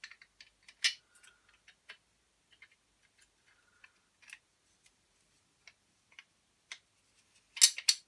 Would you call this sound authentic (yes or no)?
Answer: yes